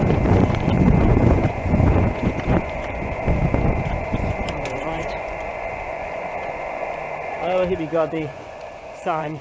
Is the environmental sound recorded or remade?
remade